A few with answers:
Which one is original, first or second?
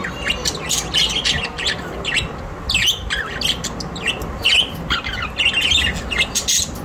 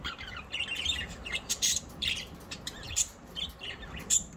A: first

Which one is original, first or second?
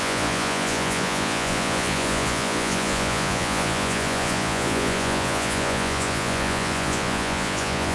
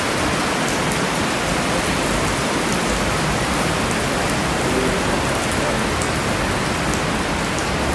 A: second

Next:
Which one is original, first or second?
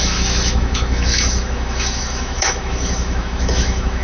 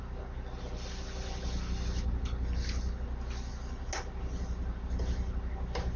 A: second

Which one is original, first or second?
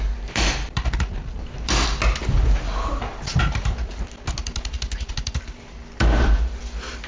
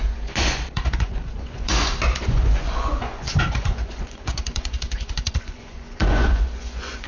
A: first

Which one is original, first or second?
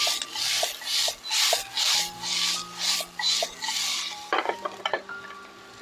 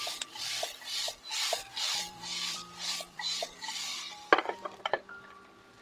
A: first